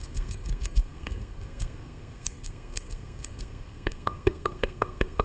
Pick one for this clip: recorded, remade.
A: remade